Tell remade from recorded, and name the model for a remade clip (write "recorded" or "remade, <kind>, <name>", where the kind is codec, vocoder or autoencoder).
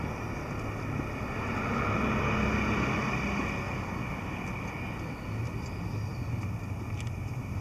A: recorded